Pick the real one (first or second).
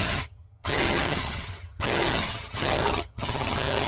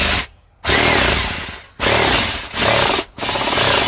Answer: second